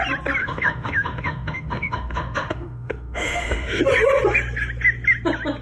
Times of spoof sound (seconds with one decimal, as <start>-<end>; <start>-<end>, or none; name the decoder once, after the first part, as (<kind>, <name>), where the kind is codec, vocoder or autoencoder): 0.4-3.8 (autoencoder, DAC-VAE)